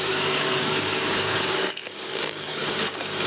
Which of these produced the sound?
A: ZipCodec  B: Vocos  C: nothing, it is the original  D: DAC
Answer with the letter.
D